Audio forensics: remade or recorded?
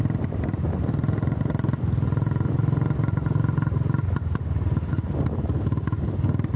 recorded